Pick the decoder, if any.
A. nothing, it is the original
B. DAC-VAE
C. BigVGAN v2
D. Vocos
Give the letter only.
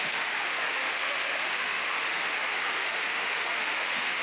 B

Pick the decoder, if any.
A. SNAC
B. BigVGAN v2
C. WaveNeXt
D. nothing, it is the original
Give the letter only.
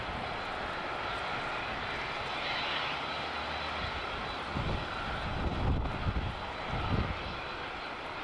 D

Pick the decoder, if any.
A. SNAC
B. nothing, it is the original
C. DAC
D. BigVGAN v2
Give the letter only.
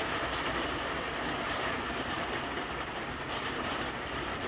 B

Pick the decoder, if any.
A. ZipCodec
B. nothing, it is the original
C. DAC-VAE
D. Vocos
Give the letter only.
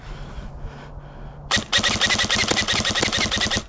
B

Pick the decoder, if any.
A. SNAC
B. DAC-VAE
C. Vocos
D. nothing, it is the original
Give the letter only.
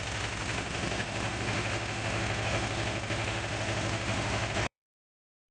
B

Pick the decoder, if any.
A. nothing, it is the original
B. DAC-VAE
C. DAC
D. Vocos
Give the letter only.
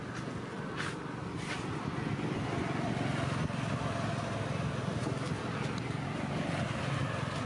A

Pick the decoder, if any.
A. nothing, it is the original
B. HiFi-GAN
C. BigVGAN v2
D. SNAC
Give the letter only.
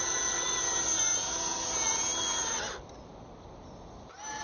A